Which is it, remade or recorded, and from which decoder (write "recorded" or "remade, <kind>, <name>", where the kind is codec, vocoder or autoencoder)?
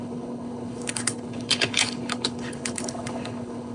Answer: remade, codec, HILCodec